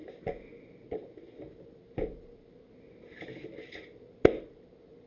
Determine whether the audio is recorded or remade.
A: recorded